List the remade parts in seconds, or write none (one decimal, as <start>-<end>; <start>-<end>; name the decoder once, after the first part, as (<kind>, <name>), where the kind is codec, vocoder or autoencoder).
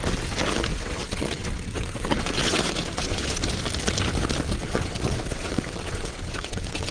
0.7-3.4 (vocoder, WaveNeXt); 4.6-6.9